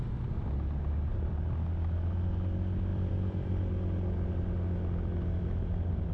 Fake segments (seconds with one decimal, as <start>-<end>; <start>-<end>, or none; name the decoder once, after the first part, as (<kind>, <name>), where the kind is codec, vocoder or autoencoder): 2.9-3.6 (vocoder, BigVGAN v2)